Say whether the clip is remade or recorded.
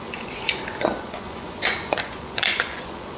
remade